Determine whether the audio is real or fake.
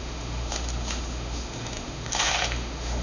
fake